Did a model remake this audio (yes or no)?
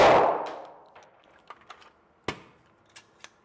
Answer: no